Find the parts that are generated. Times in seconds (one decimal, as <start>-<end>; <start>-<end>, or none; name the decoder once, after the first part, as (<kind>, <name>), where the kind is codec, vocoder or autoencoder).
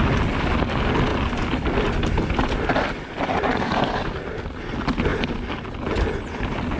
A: none